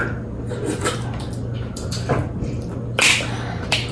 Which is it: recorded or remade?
recorded